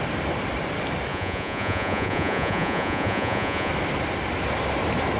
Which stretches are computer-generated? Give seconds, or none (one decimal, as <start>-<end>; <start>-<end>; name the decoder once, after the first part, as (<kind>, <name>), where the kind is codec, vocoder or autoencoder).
1.1-3.7 (vocoder, Vocos)